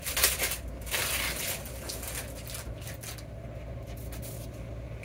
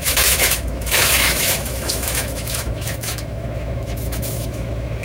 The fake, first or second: second